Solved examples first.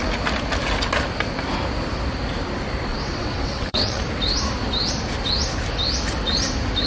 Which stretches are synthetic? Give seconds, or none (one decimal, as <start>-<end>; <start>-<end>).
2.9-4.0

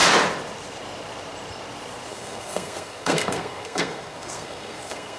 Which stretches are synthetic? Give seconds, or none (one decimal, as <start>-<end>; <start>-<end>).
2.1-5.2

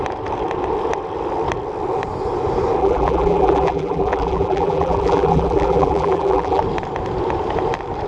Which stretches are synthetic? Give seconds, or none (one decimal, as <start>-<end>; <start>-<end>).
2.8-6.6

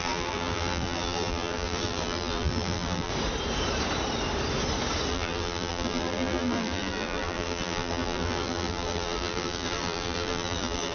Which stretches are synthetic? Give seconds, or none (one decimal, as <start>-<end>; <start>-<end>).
0.0-3.1; 5.1-10.9

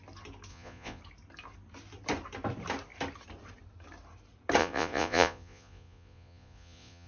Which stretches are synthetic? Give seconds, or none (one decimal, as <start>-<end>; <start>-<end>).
0.5-1.0; 4.6-7.1

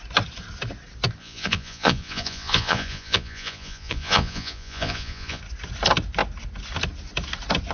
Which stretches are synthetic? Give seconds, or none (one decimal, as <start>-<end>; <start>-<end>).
1.2-5.4

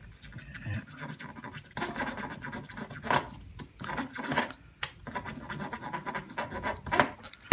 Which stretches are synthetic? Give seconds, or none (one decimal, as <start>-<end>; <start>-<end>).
0.5-5.0; 6.0-7.5